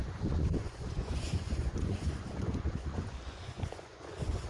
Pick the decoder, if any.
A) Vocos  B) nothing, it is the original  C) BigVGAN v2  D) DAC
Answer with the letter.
A